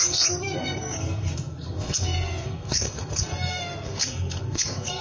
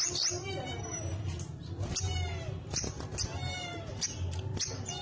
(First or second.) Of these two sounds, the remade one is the first